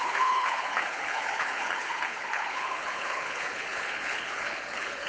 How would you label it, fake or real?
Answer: fake